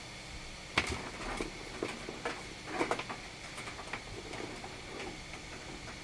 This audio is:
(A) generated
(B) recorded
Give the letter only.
B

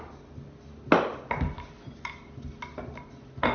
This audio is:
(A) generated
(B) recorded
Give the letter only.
B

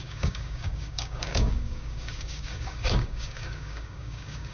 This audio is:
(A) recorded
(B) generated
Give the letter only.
B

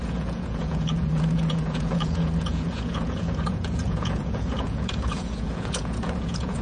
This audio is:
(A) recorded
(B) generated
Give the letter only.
B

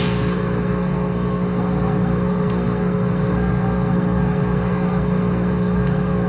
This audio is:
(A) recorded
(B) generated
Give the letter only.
B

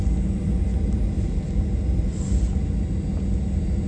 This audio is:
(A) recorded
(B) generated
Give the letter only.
A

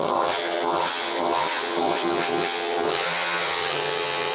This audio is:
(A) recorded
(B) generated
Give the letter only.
B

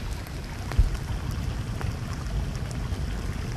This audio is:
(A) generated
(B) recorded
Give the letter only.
B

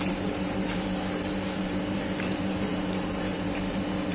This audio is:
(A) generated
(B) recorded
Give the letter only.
A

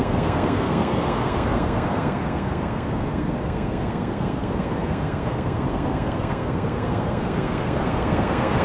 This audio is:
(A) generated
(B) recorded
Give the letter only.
A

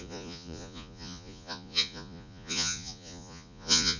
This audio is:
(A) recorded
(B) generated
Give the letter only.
B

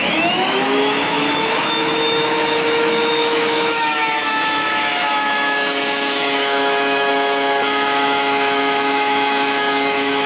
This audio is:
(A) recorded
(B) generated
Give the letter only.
B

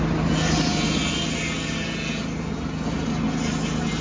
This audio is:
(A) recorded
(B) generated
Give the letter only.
A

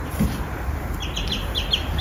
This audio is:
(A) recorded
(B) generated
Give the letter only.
A